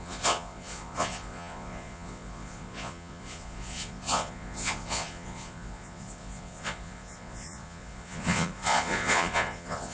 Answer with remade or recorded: remade